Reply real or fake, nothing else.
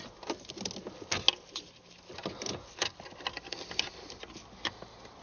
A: real